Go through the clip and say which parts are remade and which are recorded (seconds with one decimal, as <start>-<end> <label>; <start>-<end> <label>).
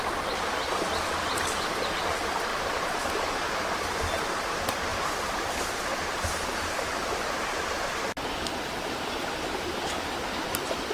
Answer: 0.0-2.5 recorded; 2.5-3.3 remade; 3.3-10.9 recorded